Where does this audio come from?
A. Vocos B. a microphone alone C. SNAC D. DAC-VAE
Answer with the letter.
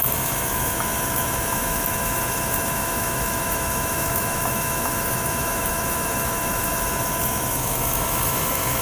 D